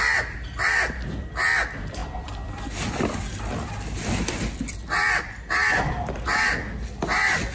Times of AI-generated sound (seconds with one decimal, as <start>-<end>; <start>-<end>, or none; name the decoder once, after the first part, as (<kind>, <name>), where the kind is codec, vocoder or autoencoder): none